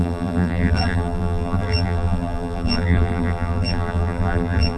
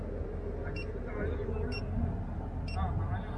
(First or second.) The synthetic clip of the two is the first